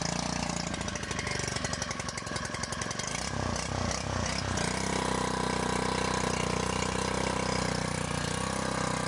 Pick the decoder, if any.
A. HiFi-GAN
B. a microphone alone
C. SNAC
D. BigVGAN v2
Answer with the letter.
B